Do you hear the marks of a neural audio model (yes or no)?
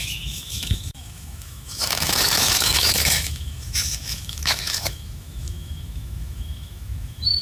yes